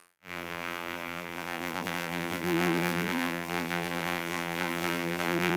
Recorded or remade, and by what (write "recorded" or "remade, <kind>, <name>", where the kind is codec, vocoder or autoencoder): remade, vocoder, BigVGAN v2